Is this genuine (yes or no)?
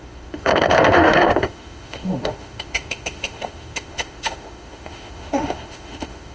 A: no